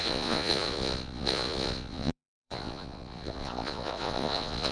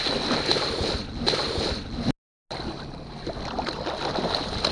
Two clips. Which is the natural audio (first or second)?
second